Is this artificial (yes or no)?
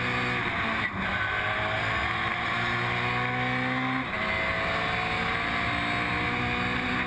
no